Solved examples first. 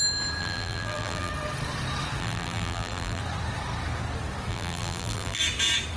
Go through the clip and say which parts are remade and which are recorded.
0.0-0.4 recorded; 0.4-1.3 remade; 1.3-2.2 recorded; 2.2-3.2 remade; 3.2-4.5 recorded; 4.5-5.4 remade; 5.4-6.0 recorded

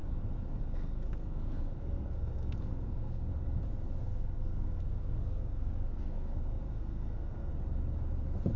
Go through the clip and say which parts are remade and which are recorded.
0.0-0.6 recorded; 0.6-3.3 remade; 3.3-4.0 recorded; 4.0-7.5 remade; 7.5-8.6 recorded

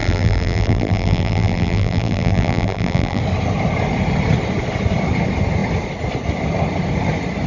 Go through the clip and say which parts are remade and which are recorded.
0.0-3.2 remade; 3.2-7.5 recorded

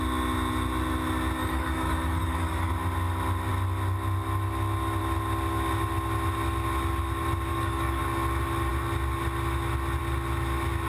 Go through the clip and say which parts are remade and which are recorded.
0.0-1.4 recorded; 1.4-2.7 remade; 2.7-7.5 recorded; 7.5-8.0 remade; 8.0-10.9 recorded

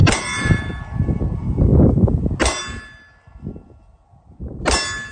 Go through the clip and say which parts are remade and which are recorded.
0.0-0.8 remade; 0.8-5.1 recorded

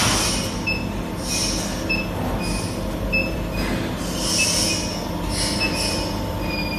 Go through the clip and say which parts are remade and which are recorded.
0.0-6.8 recorded